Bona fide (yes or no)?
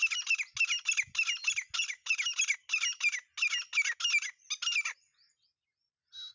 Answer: yes